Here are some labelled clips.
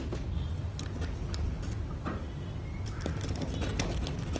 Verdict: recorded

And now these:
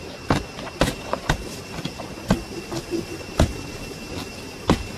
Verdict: recorded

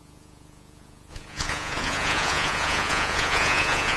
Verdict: remade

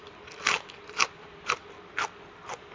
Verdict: recorded